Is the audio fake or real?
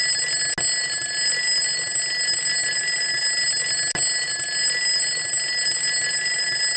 real